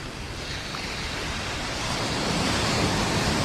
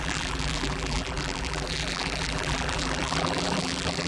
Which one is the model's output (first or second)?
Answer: second